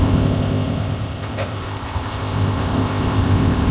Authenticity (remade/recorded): remade